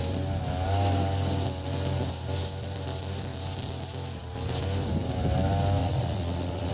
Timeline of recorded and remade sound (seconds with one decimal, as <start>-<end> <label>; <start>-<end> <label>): 0.0-5.8 recorded; 5.8-6.7 remade